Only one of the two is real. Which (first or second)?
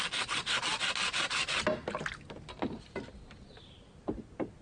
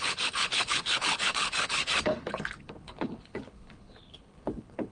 first